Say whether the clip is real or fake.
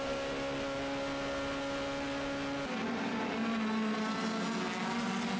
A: real